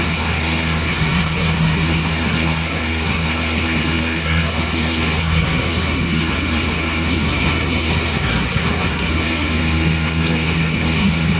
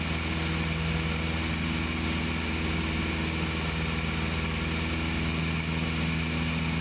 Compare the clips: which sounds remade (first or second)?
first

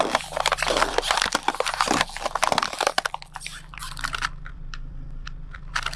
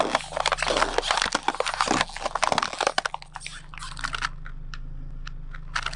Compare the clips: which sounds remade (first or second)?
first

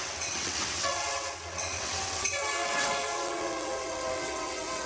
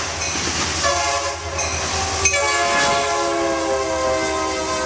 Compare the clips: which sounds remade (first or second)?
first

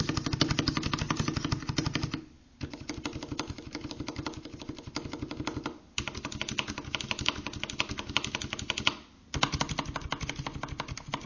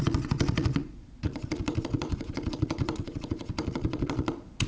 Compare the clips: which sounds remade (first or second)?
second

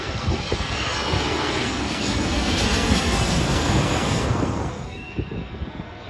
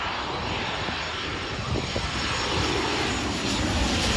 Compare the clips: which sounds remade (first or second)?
first